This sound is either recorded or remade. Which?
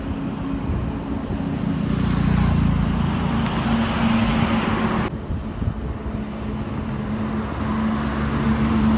recorded